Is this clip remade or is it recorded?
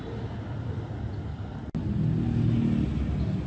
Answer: recorded